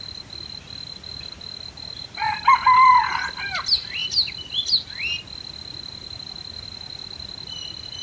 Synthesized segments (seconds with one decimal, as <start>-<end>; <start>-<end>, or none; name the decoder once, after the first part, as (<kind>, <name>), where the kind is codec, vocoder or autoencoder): none